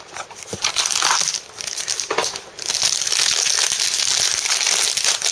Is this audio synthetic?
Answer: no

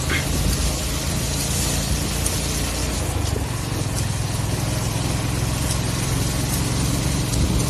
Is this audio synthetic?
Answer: no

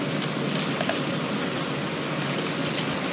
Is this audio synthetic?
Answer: no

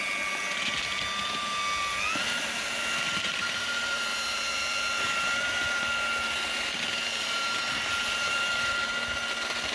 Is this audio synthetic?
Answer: no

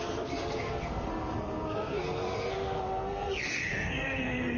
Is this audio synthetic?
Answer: yes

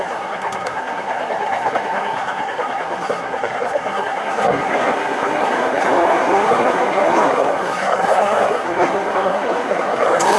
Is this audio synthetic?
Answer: yes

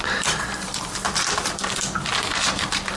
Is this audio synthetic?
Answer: no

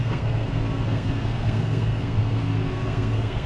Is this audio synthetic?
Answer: yes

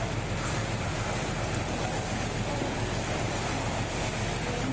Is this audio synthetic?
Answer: no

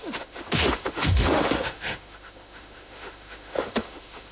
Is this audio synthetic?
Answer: yes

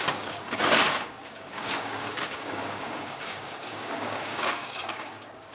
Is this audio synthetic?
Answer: yes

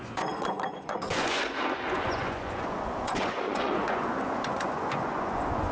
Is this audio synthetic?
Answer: yes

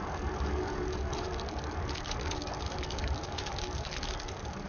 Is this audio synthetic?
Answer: yes